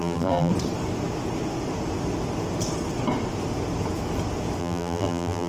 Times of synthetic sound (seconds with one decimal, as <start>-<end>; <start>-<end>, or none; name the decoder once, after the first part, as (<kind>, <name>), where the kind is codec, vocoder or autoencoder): 0.0-0.5 (vocoder, BigVGAN v2); 4.6-5.5